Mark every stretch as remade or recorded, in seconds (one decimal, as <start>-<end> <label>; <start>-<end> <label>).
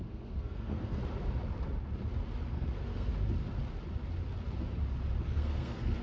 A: 0.0-1.0 remade; 1.0-2.5 recorded; 2.5-3.1 remade; 3.1-5.2 recorded; 5.2-6.0 remade